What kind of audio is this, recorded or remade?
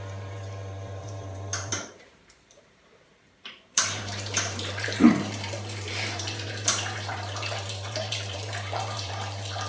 remade